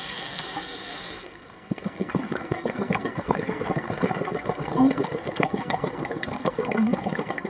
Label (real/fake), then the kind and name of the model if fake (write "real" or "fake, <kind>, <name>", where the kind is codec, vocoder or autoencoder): fake, codec, SNAC